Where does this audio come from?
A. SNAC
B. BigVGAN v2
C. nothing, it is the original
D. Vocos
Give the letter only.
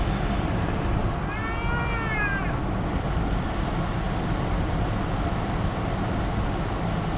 C